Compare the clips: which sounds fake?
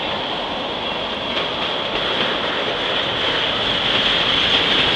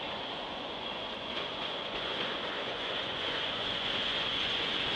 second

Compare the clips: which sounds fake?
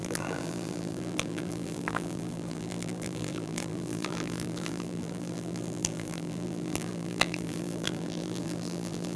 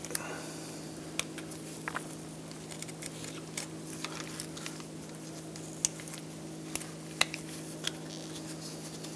first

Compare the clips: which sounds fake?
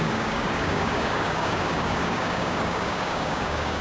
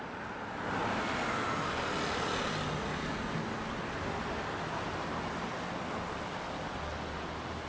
first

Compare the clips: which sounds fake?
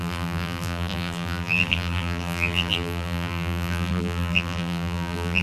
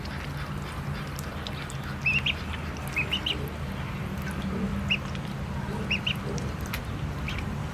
first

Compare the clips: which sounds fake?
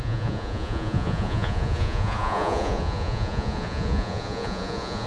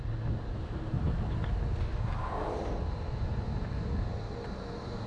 first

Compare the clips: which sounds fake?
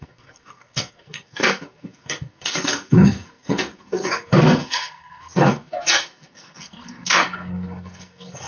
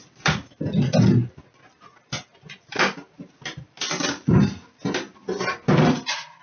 first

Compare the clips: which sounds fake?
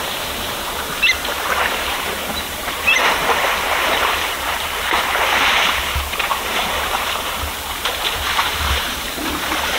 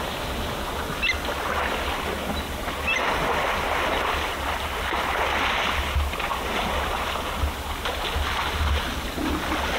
first